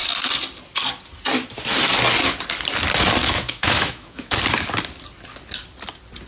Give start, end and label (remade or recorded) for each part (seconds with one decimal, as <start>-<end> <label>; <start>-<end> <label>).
0.0-3.2 recorded; 3.2-4.4 remade; 4.4-6.3 recorded